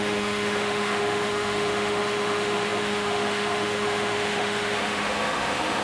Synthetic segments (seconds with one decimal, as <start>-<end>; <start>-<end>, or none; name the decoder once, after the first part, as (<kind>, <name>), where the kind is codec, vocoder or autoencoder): 0.0-5.8 (autoencoder, DAC-VAE)